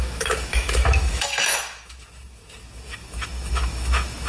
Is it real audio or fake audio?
fake